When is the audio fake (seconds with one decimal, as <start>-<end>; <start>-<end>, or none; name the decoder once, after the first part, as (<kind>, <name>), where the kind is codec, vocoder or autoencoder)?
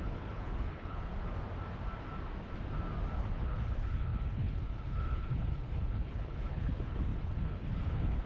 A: 0.0-1.1 (codec, HILCodec); 3.1-8.3